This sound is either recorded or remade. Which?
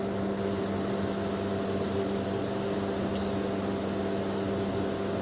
recorded